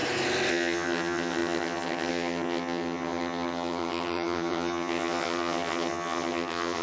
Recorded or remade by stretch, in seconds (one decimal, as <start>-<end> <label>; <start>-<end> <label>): 0.0-0.5 recorded; 0.5-6.8 remade